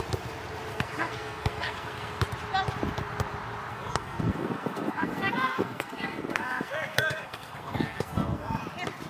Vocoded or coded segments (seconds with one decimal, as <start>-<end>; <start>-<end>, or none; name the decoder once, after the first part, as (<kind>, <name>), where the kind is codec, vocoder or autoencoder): 0.7-2.2 (codec, SNAC); 3.7-8.6